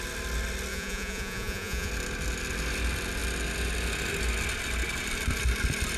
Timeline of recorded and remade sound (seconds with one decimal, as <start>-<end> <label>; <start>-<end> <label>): 0.0-0.7 recorded; 0.7-1.9 remade; 1.9-6.0 recorded